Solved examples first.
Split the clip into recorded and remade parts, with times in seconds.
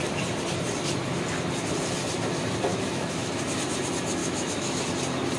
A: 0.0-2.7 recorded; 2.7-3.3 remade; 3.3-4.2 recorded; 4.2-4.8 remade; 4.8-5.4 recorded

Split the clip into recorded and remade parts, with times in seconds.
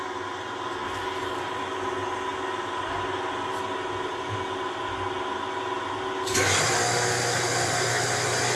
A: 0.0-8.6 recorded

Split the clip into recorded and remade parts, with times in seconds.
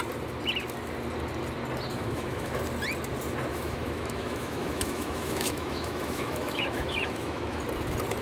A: 0.0-1.9 recorded; 1.9-2.6 remade; 2.6-3.5 recorded; 3.5-7.6 remade; 7.6-8.2 recorded